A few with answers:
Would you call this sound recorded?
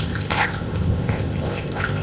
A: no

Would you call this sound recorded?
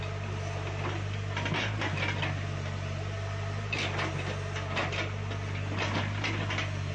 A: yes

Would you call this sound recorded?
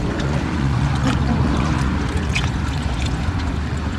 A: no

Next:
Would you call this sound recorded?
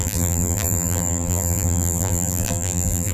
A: no